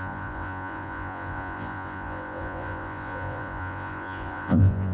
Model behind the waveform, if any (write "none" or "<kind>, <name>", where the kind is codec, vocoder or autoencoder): vocoder, Vocos